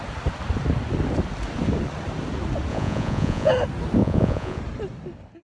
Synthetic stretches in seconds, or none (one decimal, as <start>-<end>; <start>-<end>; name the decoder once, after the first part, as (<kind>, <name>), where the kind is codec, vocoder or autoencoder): 2.7-3.5 (vocoder, Vocos); 4.0-4.6